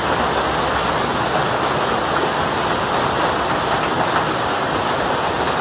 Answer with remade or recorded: recorded